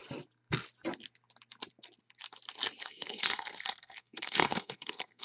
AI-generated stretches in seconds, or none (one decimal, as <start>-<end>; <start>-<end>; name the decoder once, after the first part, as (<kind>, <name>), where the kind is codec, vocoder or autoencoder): 2.8-5.2 (codec, SNAC)